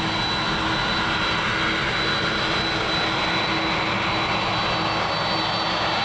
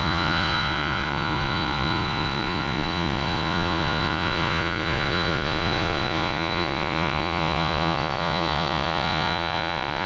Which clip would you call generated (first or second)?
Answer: second